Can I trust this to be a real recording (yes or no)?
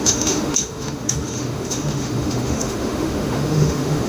no